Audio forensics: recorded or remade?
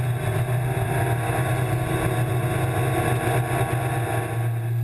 recorded